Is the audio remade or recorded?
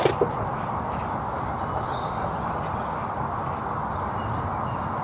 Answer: recorded